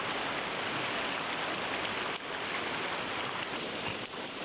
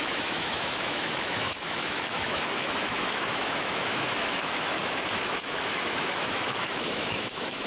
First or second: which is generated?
second